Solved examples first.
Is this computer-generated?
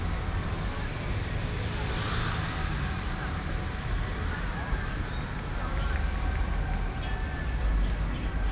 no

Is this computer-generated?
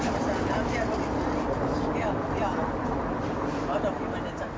no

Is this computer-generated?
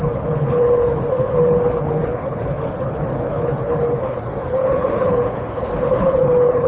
yes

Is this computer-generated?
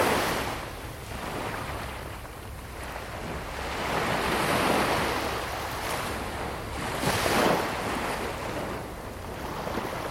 no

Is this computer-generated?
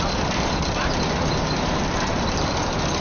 yes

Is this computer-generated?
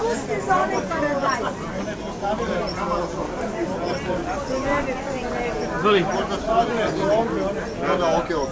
no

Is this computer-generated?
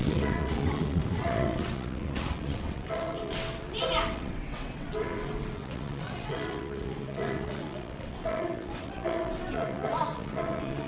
yes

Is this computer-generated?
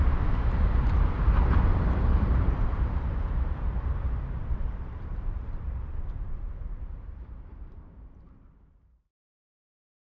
yes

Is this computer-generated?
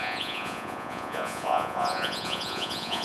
yes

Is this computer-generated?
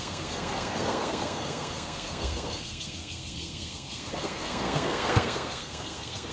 yes